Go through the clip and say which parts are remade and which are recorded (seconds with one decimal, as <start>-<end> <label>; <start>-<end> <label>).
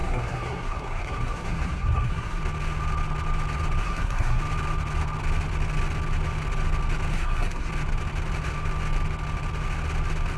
0.0-2.4 remade; 2.4-3.8 recorded; 3.8-4.4 remade; 4.4-7.1 recorded; 7.1-7.7 remade; 7.7-10.4 recorded